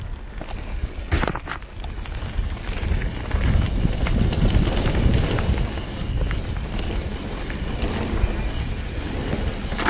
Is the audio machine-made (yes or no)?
no